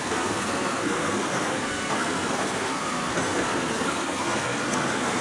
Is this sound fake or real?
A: fake